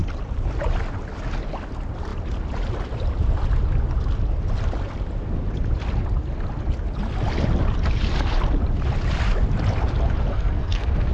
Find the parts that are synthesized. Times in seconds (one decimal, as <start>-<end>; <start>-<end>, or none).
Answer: 10.3-11.1